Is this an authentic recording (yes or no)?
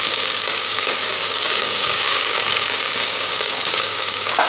no